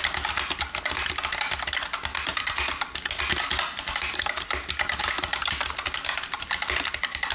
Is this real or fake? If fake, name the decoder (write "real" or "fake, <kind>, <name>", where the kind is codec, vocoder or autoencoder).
real